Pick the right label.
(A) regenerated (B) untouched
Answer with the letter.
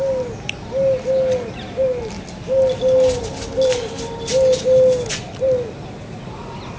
B